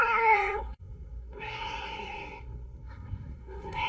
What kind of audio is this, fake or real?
fake